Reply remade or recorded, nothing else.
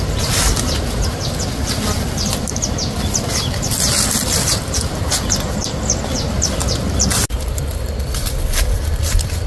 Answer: recorded